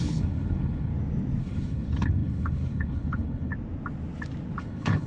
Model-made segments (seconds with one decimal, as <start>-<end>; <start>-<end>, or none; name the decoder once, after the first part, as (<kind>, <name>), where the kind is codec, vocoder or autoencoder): 0.0-0.9 (codec, HILCodec); 1.4-3.5; 4.6-5.1